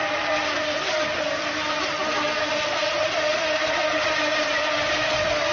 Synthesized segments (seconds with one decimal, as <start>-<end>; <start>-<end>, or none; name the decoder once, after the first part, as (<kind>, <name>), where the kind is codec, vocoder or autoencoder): none

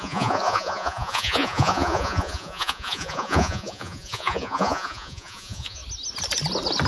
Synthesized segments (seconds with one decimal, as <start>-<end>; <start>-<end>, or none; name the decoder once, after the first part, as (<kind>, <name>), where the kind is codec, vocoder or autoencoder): 0.0-5.8 (vocoder, Vocos)